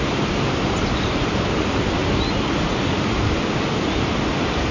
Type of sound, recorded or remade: recorded